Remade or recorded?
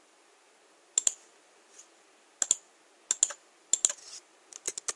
recorded